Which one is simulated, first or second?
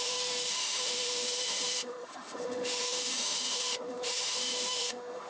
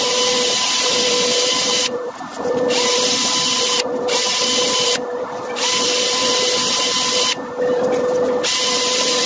first